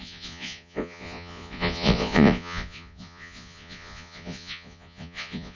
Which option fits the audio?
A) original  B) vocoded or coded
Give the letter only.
B